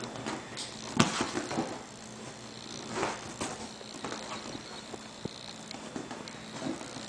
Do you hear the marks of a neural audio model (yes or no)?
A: no